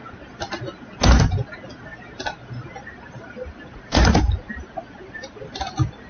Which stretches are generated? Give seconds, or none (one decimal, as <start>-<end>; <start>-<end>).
1.9-5.6